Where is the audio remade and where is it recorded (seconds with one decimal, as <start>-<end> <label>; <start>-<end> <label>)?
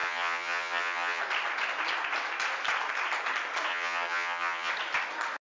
0.0-1.2 remade; 1.2-3.7 recorded; 3.7-4.7 remade; 4.7-5.5 recorded